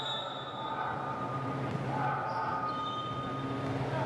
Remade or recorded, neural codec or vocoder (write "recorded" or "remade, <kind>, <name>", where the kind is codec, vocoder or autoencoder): recorded